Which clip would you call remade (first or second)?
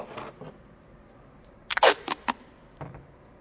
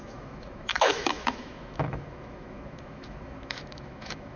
second